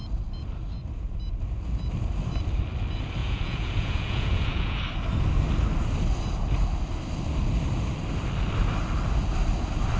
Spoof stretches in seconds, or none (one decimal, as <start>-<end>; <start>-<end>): 3.2-4.8